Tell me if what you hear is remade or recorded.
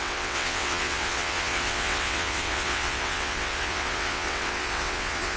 remade